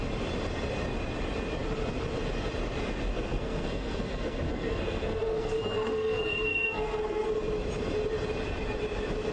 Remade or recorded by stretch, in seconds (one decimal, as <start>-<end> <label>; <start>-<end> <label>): 0.0-3.1 recorded; 3.1-7.3 remade; 7.3-9.3 recorded